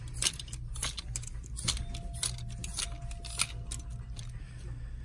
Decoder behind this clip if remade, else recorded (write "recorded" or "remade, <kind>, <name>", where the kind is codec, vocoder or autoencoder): recorded